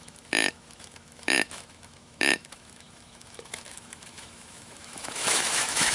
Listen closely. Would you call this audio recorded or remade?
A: remade